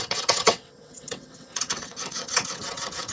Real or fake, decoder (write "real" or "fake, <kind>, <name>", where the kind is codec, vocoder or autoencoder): fake, vocoder, WaveNeXt